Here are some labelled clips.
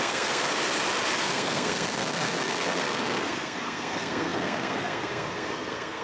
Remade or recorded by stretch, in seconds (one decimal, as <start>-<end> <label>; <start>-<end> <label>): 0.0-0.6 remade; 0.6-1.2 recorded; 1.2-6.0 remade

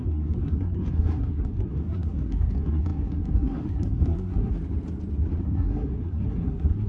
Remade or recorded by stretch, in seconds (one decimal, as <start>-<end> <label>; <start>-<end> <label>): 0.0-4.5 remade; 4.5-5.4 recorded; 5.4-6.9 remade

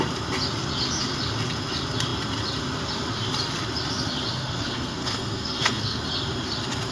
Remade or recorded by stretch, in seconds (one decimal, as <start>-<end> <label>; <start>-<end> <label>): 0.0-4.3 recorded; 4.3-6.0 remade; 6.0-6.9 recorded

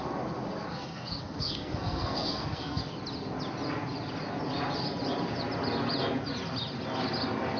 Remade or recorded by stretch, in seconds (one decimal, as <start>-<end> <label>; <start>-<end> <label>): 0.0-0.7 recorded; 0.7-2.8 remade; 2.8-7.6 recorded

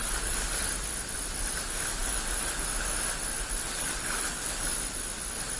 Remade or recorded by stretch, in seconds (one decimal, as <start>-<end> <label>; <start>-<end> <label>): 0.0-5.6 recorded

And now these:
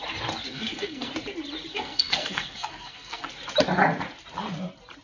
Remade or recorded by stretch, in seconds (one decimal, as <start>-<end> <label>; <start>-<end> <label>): 0.0-0.5 recorded; 0.5-1.1 remade; 1.1-1.7 recorded; 1.7-3.3 remade; 3.3-5.0 recorded

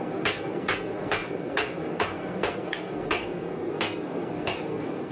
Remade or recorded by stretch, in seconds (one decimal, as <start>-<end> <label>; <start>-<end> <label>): 0.0-5.1 remade

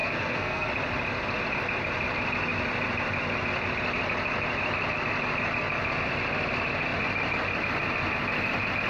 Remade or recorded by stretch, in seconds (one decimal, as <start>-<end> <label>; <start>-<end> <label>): 0.0-0.7 remade; 0.7-8.9 recorded